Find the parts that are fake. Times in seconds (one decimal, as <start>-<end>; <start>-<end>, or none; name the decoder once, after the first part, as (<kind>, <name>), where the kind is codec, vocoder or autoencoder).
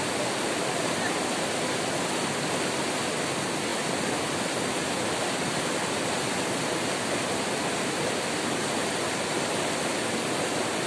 none